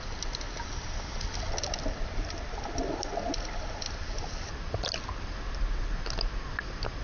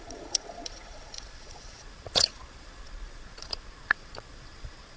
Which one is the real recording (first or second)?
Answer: first